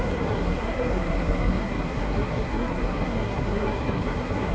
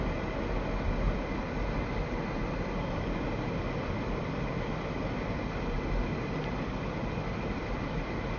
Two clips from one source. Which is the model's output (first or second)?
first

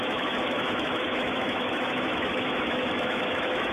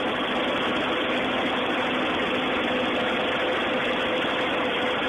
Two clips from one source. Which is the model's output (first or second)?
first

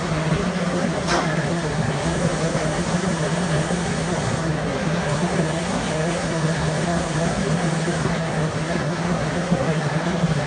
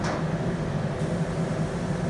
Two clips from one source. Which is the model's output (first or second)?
first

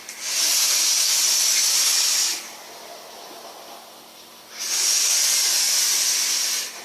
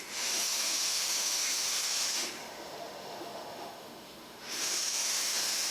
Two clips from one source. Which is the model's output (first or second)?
second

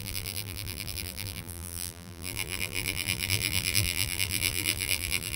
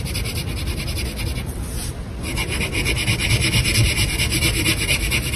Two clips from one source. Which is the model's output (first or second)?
first